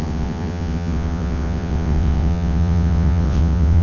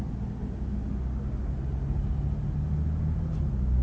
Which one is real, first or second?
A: second